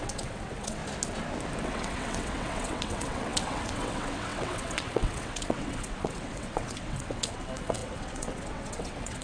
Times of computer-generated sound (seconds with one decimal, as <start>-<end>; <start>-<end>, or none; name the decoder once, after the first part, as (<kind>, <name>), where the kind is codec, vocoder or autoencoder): 0.0-0.8 (vocoder, WaveNeXt); 1.6-9.2